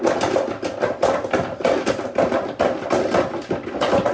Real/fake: real